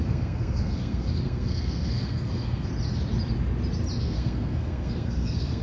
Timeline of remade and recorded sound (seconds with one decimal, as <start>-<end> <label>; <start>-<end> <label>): 0.0-2.7 remade; 2.7-4.0 recorded; 4.0-5.6 remade